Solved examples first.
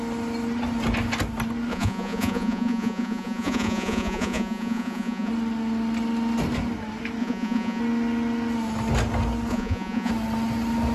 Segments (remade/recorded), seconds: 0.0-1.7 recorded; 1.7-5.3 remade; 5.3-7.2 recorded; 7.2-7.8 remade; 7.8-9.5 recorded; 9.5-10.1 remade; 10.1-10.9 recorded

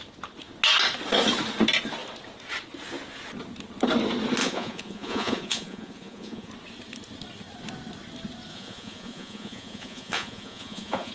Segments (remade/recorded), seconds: 0.0-4.4 recorded; 4.4-6.5 remade; 6.5-8.5 recorded; 8.5-11.1 remade

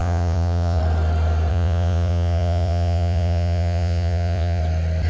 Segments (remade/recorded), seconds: 0.0-0.8 remade; 0.8-1.5 recorded; 1.5-4.6 remade; 4.6-5.1 recorded

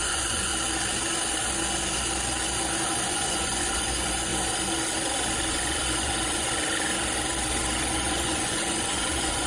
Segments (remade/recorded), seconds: 0.0-0.5 remade; 0.5-3.1 recorded; 3.1-4.3 remade; 4.3-5.5 recorded; 5.5-6.6 remade; 6.6-7.9 recorded; 7.9-9.5 remade

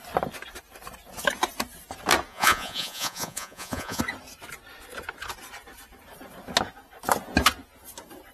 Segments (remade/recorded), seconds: 0.0-2.3 recorded; 2.3-4.0 remade; 4.0-8.3 recorded

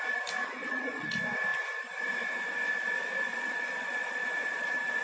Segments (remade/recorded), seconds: 0.0-0.4 recorded; 0.4-1.1 remade; 1.1-3.3 recorded; 3.3-5.0 remade

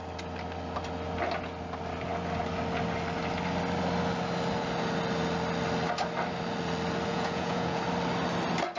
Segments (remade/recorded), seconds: 0.0-7.1 recorded; 7.1-7.8 remade; 7.8-8.8 recorded